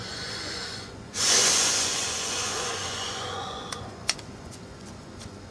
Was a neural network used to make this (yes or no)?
yes